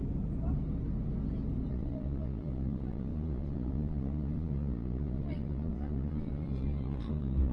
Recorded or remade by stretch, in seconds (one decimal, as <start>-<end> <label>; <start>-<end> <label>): 0.0-1.7 recorded; 1.7-7.5 remade